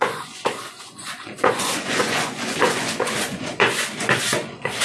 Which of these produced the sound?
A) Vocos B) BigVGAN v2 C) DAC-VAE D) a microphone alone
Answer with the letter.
A